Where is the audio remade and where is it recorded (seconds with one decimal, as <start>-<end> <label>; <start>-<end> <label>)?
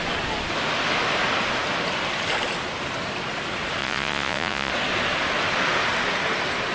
0.0-3.8 recorded; 3.8-4.7 remade; 4.7-6.7 recorded